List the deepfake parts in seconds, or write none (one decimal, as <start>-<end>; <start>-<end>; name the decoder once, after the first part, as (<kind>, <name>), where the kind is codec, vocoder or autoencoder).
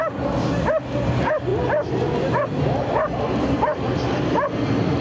none